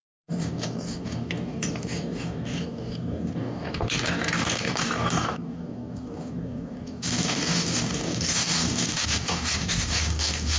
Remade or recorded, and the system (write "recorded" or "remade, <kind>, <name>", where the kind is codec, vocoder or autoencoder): remade, codec, DAC